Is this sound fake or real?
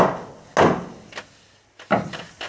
real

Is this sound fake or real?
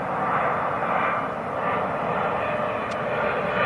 real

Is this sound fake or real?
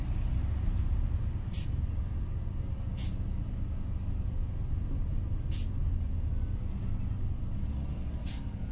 real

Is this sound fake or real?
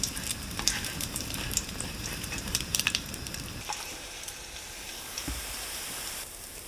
fake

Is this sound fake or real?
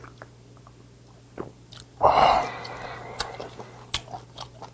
real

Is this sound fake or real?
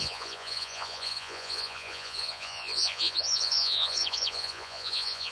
fake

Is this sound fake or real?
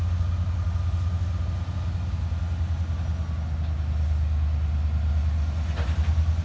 real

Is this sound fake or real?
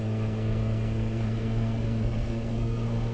fake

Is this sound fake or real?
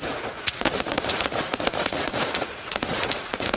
fake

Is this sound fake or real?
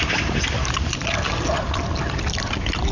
real